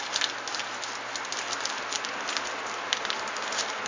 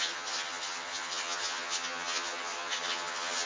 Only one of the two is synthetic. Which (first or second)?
second